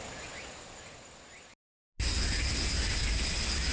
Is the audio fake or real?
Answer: real